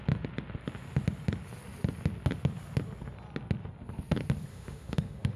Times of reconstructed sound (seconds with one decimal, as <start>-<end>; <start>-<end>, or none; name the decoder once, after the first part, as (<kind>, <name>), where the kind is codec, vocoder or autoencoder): 4.5-5.4 (autoencoder, DAC-VAE)